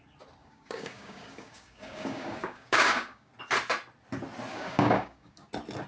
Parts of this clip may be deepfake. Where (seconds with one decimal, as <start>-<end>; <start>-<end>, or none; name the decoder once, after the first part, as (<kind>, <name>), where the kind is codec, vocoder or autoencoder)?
0.4-3.3 (codec, DAC); 4.5-5.5